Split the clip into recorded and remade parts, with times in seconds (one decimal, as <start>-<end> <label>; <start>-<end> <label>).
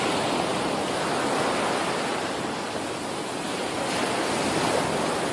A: 0.0-5.3 recorded